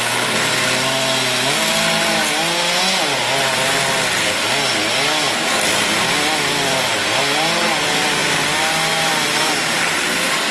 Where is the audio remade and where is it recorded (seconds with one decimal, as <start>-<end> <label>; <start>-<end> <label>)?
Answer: 0.0-10.5 recorded